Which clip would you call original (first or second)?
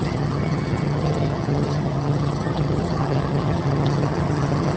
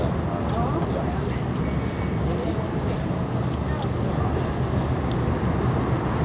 second